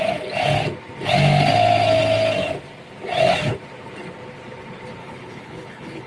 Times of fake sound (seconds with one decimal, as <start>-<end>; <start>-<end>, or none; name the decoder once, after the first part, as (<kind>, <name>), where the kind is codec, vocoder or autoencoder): 5.0-6.1 (codec, HILCodec)